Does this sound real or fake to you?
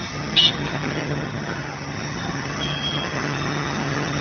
fake